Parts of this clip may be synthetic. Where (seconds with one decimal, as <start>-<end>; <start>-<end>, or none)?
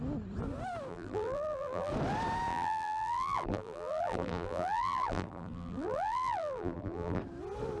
0.9-1.9; 2.5-7.2